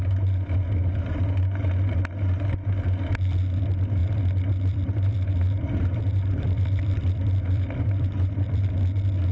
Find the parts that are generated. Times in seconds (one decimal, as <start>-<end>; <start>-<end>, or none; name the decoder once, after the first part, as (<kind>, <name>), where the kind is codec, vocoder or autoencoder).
4.0-8.7 (vocoder, BigVGAN v2)